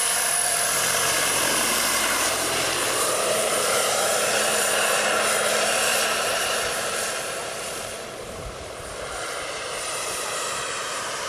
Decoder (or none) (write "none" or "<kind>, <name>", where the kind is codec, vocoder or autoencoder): vocoder, BigVGAN v2